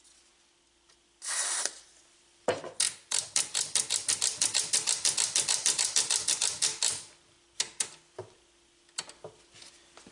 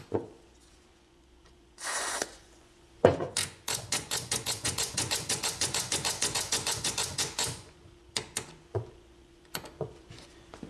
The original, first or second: first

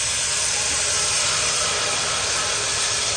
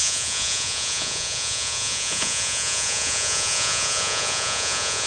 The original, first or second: first